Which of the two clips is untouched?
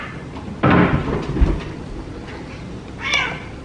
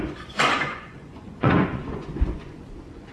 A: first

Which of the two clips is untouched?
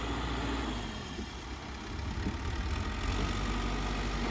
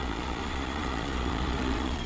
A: first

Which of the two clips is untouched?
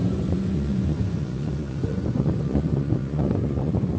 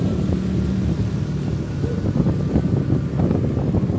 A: second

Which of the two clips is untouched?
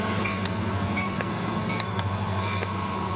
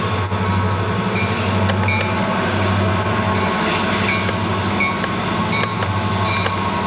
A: second